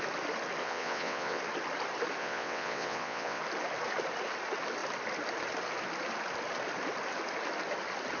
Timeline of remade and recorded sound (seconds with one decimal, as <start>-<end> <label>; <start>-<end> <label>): 0.0-0.6 recorded; 0.6-1.4 remade; 1.4-2.2 recorded; 2.2-3.4 remade; 3.4-8.2 recorded